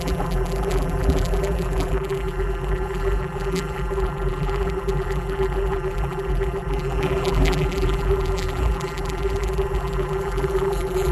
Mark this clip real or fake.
fake